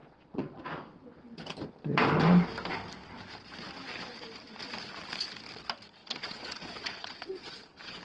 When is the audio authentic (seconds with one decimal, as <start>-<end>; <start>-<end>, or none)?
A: 0.6-6.0